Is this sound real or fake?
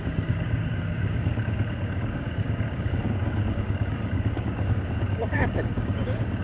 fake